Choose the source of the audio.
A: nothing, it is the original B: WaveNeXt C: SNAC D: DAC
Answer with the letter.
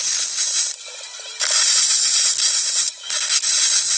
A